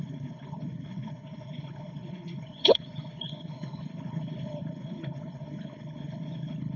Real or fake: fake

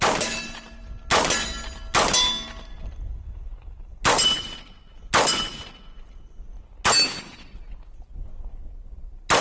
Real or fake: real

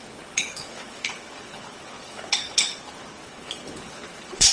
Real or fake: fake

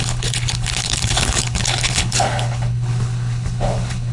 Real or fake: fake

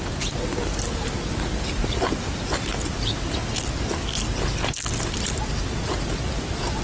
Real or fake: real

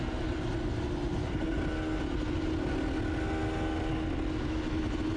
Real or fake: real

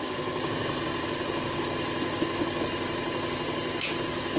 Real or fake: real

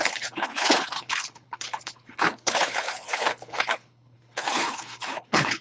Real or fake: fake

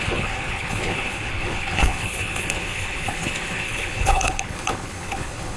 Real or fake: fake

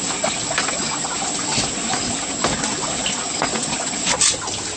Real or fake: real